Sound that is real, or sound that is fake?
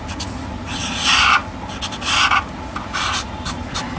real